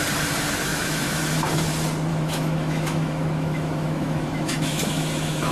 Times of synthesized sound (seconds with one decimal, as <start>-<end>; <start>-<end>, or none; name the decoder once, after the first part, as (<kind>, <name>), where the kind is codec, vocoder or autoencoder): 0.7-1.2 (autoencoder, DAC-VAE); 2.1-5.5